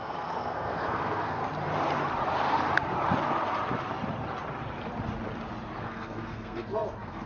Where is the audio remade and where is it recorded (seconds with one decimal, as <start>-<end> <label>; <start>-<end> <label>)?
0.0-1.4 remade; 1.4-5.8 recorded; 5.8-7.3 remade